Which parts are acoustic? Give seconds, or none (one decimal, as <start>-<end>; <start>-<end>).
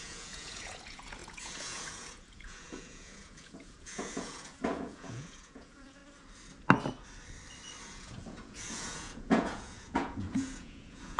6.0-7.8